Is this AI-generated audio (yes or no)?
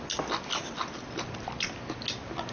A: no